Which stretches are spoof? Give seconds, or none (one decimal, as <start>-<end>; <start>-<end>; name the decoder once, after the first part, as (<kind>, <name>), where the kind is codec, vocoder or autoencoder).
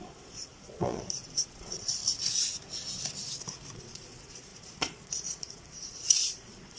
0.0-2.0 (vocoder, Vocos); 3.7-6.8